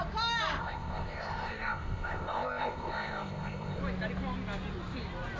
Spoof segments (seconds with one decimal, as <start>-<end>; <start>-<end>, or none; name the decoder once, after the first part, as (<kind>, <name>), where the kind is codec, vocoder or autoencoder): 0.6-3.8 (codec, ZipCodec)

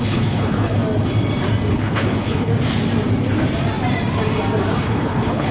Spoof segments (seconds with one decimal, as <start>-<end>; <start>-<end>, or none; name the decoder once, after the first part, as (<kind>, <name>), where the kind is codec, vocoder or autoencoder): 0.0-0.8 (codec, HILCodec); 1.7-2.5; 4.8-5.5

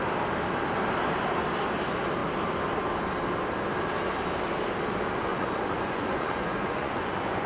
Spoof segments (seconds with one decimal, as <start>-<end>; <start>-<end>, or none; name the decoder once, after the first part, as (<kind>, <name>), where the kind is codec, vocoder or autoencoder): 5.3-7.5 (vocoder, Vocos)

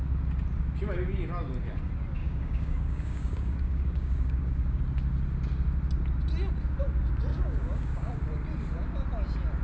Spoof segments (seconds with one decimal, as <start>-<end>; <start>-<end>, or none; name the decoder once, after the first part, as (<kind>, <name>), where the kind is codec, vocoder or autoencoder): 2.2-4.8 (codec, DAC); 7.3-8.1

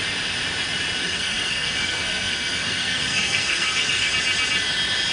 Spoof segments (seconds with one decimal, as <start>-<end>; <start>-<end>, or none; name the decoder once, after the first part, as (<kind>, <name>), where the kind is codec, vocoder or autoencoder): 1.0-4.1 (codec, SNAC)

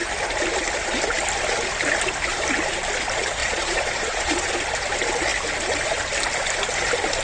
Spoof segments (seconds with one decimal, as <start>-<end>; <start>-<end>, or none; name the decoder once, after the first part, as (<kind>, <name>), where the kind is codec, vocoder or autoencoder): 3.4-4.5 (vocoder, Vocos)

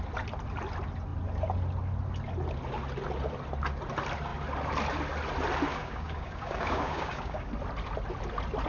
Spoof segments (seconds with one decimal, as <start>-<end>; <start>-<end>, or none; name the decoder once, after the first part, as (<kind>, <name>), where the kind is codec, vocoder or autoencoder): 5.7-7.5 (codec, DAC)